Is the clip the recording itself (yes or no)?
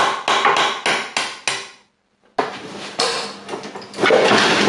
yes